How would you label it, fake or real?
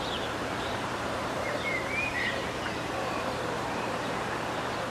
fake